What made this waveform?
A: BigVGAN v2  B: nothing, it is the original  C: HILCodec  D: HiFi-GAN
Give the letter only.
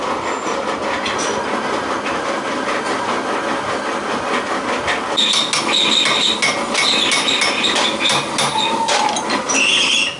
B